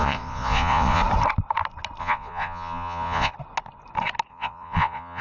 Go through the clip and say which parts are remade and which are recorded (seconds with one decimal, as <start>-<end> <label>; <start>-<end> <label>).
0.0-1.0 remade; 1.0-2.0 recorded; 2.0-3.3 remade; 3.3-4.3 recorded; 4.3-5.2 remade